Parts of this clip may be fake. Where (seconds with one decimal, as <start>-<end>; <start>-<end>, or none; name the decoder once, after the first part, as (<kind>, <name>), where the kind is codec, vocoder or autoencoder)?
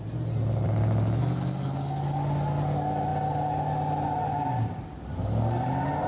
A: none